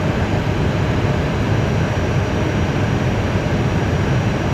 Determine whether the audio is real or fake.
real